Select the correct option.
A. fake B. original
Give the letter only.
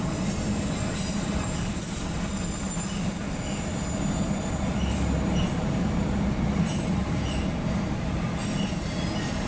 B